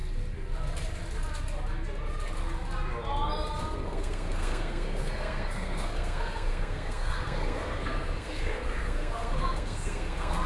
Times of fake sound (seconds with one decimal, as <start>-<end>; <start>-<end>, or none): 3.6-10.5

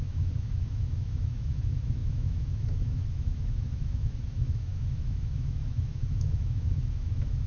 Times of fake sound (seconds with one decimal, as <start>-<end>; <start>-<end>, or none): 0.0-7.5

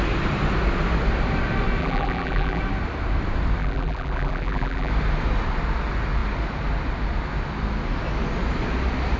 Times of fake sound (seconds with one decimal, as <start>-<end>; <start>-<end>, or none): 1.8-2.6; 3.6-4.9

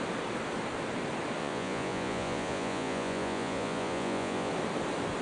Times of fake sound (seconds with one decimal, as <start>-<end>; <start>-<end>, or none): 1.4-4.5

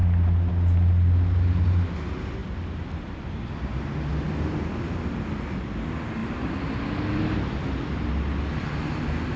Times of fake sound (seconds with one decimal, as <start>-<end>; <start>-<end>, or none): none